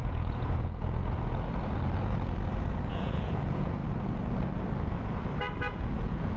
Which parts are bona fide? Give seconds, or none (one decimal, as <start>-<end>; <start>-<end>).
1.0-2.9; 3.8-5.7